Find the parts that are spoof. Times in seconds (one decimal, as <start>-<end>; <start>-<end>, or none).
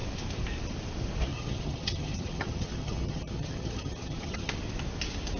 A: 1.3-4.5